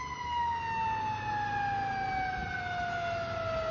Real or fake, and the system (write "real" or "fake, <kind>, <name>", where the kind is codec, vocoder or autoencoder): real